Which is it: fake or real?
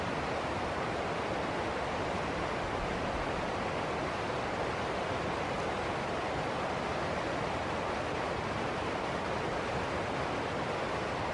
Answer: real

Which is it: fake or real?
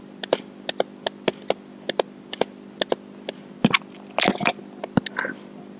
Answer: real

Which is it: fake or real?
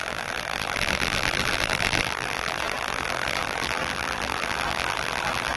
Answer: fake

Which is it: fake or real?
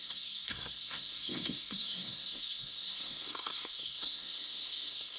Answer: fake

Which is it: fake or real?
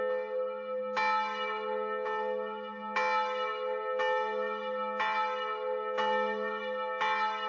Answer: real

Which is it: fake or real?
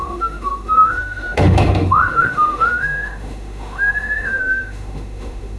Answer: fake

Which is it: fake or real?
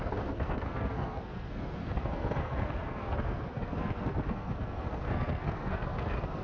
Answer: fake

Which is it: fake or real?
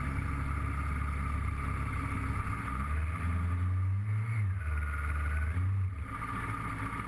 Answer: real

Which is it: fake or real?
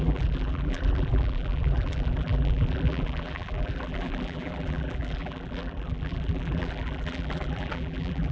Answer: fake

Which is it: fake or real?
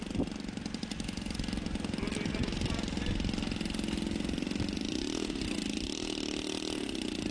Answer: real